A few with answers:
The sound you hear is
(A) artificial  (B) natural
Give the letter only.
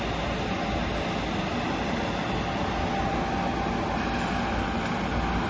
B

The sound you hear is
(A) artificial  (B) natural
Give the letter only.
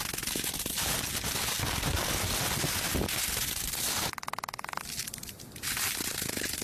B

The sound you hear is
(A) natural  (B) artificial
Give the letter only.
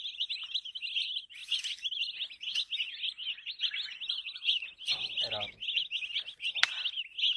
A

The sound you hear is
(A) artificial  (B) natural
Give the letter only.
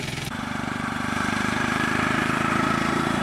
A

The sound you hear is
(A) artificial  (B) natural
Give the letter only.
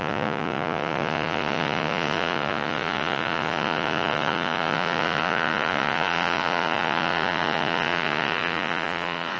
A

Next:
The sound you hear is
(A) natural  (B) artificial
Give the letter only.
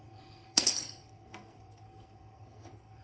B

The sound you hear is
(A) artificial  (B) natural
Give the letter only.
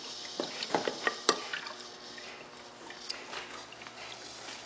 B